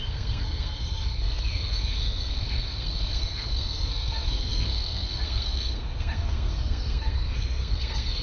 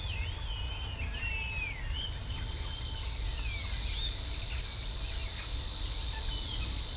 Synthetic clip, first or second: first